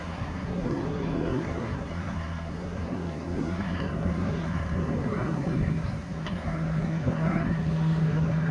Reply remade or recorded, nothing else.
remade